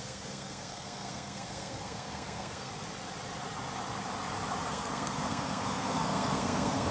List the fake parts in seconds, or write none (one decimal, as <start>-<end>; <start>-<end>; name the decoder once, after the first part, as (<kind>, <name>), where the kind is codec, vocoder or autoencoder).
0.0-2.7 (codec, SNAC); 4.7-6.9